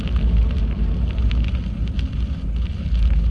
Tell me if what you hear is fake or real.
real